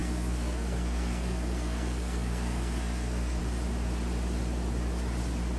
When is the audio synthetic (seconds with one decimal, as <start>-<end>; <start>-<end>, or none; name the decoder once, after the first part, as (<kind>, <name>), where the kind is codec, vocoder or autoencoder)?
0.0-3.4 (codec, SNAC)